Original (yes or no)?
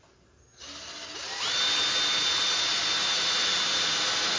yes